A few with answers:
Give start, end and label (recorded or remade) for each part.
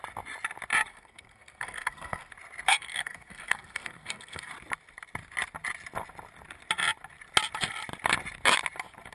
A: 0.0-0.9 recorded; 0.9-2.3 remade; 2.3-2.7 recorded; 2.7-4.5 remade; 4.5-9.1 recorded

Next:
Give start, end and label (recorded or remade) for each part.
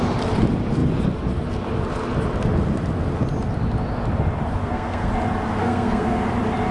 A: 0.0-4.6 recorded; 4.6-5.1 remade; 5.1-5.6 recorded; 5.6-6.3 remade; 6.3-6.7 recorded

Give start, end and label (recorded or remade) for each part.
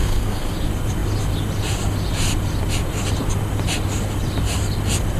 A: 0.0-0.5 remade; 0.5-5.2 recorded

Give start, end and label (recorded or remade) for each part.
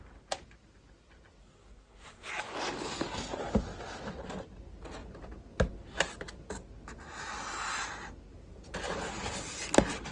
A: 0.0-1.4 recorded; 1.4-2.3 remade; 2.3-10.1 recorded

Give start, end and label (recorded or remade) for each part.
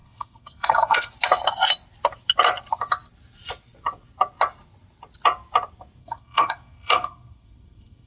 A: 0.0-1.1 remade; 1.1-6.0 recorded; 6.0-8.1 remade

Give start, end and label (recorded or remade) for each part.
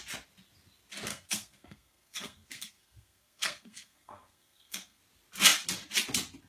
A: 0.0-1.1 recorded; 1.1-5.0 remade; 5.0-6.5 recorded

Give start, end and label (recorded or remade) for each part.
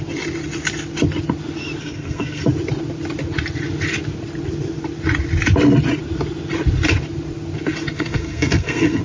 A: 0.0-1.8 recorded; 1.8-2.4 remade; 2.4-7.9 recorded; 7.9-9.0 remade